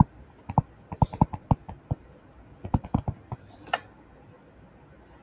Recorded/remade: recorded